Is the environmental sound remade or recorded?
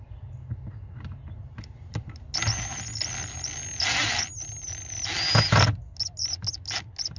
recorded